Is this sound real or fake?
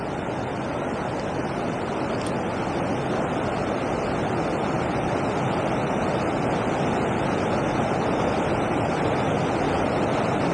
real